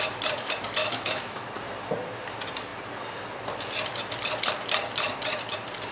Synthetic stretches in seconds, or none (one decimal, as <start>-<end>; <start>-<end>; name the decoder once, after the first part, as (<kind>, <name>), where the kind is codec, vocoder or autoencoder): 0.8-1.4 (autoencoder, DAC-VAE)